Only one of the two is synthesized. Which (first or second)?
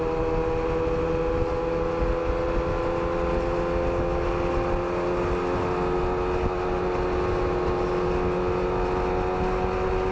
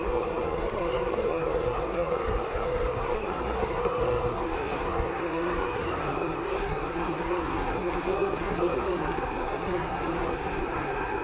second